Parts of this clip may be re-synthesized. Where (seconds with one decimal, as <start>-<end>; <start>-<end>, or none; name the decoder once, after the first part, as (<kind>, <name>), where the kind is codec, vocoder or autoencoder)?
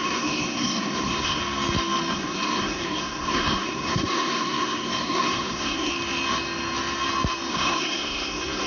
0.0-1.4 (codec, SNAC); 2.1-5.9; 7.5-8.7